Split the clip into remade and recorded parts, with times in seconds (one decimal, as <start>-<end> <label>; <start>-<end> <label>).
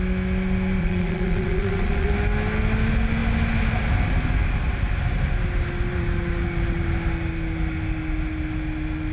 0.0-0.8 recorded; 0.8-2.1 remade; 2.1-9.1 recorded